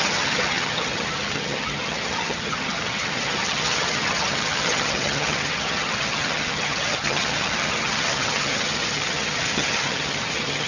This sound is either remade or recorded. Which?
remade